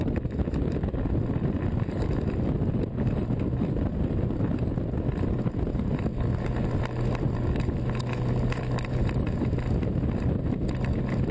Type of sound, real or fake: real